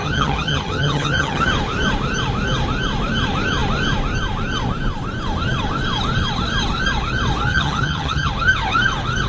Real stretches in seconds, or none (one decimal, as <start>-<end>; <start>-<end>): 1.5-7.5; 8.3-9.3